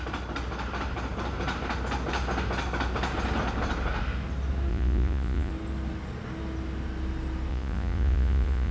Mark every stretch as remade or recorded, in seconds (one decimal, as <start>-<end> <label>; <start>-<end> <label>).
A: 0.0-4.7 recorded; 4.7-5.5 remade; 5.5-7.5 recorded; 7.5-8.7 remade